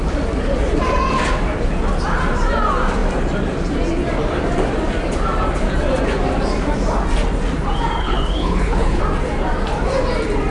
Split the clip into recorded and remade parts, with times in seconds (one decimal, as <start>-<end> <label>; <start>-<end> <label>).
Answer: 0.0-8.0 recorded; 8.0-9.0 remade; 9.0-10.5 recorded

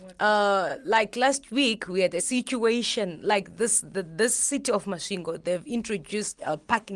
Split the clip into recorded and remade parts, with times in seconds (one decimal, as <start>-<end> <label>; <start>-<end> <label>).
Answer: 0.0-6.3 recorded; 6.3-7.0 remade